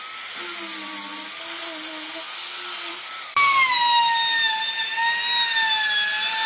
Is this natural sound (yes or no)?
yes